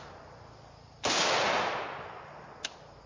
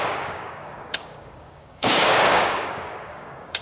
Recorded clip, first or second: first